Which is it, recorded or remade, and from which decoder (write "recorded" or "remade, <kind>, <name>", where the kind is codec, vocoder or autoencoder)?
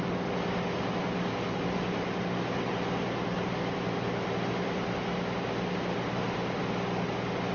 recorded